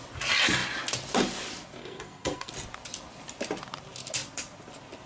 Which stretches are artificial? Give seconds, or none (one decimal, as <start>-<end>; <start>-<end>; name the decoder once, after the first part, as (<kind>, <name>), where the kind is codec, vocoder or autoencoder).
1.8-2.5 (codec, SNAC)